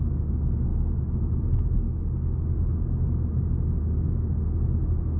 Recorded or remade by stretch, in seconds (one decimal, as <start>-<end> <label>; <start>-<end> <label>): 0.0-5.2 recorded